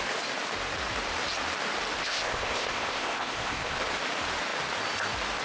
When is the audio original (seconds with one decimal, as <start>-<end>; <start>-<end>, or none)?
0.0-2.0; 3.8-5.4